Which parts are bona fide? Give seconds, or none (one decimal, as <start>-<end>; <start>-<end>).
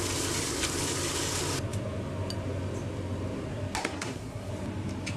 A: 0.0-3.8; 4.5-5.2